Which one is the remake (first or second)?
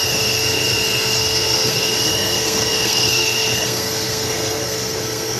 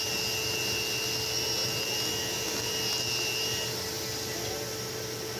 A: first